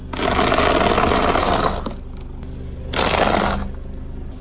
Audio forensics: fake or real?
real